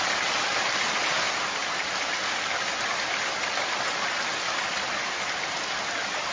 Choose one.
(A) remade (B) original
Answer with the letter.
B